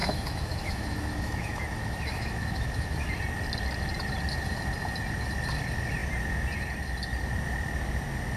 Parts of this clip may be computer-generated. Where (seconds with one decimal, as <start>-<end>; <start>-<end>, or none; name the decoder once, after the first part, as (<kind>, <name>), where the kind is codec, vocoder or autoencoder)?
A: 0.0-3.1 (autoencoder, DAC-VAE)